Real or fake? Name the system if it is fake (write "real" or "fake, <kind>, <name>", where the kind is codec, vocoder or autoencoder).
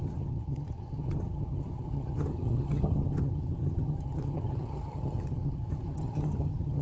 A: fake, vocoder, HiFi-GAN